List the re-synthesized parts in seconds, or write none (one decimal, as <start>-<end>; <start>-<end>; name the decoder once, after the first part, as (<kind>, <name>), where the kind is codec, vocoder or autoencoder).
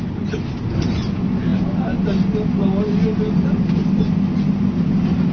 none